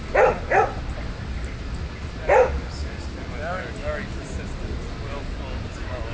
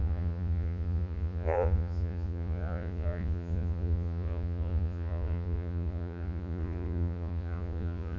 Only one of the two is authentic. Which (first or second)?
first